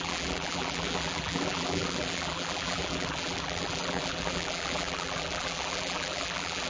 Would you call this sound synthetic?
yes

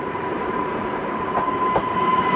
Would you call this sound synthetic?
yes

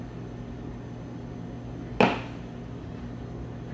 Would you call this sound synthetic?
no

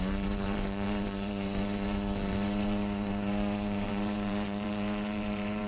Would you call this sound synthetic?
yes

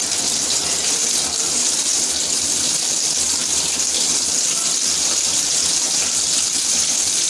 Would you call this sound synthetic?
yes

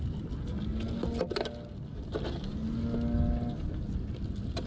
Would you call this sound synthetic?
no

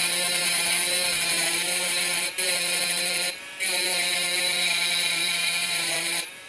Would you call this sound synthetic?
yes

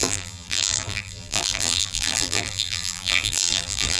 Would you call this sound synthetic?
yes